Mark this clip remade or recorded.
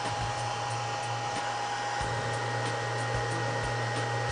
recorded